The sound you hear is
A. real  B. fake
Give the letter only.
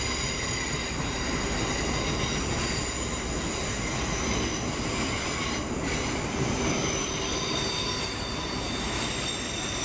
A